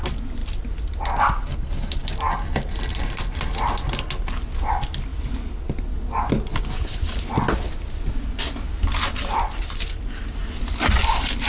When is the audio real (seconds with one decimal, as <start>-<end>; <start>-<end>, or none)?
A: 0.0-11.5